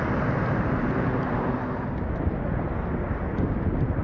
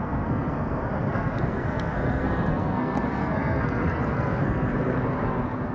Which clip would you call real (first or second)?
first